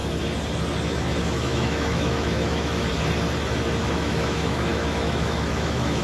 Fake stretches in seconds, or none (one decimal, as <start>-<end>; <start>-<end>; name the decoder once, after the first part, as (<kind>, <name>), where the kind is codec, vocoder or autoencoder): 1.2-2.9 (autoencoder, DAC-VAE); 3.8-6.0